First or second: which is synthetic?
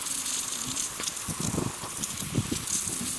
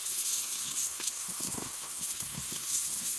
second